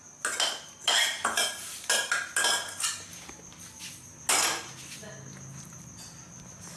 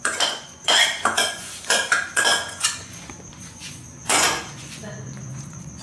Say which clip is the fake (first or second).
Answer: second